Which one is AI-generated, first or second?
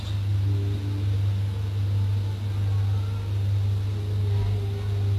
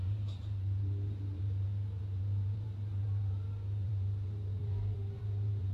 second